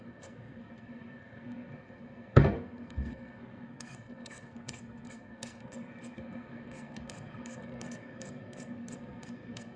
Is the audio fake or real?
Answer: fake